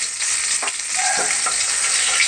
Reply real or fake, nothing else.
real